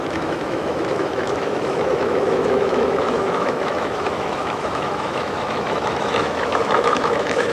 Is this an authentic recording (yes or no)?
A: no